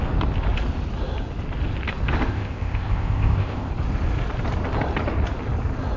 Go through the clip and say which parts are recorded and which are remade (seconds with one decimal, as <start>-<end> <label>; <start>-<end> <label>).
0.0-2.3 recorded; 2.3-3.7 remade; 3.7-6.0 recorded